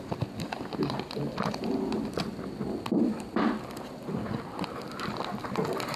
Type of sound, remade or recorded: recorded